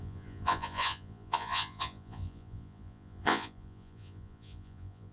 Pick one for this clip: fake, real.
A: fake